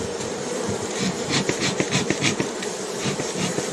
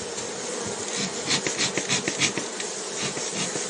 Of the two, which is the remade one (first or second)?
first